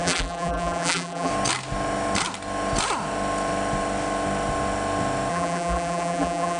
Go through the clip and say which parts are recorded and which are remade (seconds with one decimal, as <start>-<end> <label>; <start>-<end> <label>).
0.0-1.3 remade; 1.3-5.3 recorded; 5.3-6.6 remade